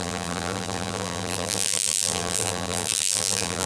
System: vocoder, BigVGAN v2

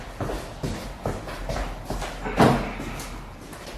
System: vocoder, BigVGAN v2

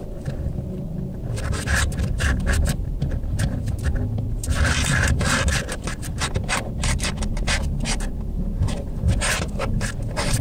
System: vocoder, BigVGAN v2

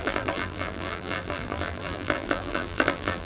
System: vocoder, BigVGAN v2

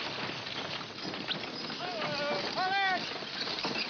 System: none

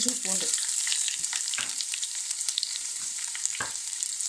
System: vocoder, BigVGAN v2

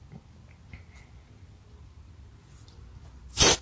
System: none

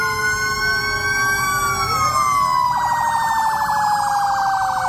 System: none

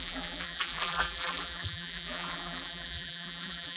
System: vocoder, BigVGAN v2